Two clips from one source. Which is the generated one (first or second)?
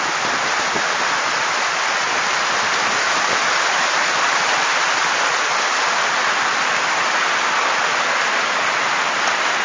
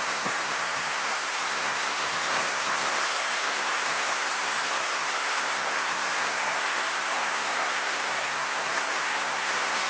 second